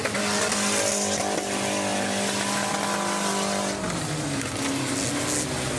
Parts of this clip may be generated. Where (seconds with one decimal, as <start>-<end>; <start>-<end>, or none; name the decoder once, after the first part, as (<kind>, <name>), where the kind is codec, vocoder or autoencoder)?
none